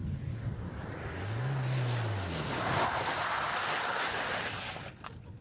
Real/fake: real